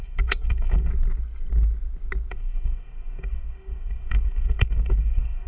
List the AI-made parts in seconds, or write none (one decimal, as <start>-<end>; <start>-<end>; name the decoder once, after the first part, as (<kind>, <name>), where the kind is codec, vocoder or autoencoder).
0.0-0.9 (codec, SNAC); 2.3-5.5